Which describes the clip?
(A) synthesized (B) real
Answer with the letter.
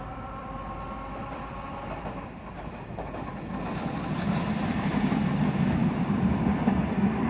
A